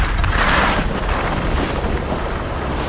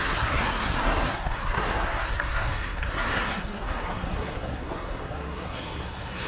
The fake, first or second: second